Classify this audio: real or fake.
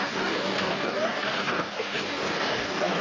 fake